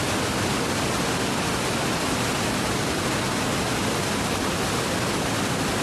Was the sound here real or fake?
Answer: real